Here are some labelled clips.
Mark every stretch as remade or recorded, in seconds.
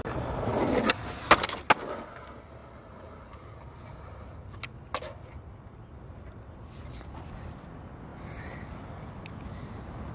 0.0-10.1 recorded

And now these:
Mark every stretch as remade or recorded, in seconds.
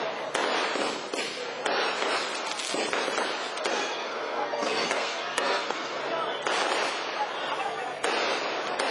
0.0-3.7 recorded; 3.7-6.0 remade; 6.0-8.9 recorded